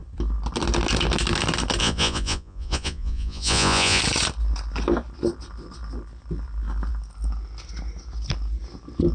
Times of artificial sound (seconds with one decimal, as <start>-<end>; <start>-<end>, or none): 1.8-4.0